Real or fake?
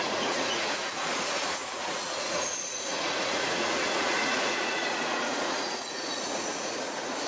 fake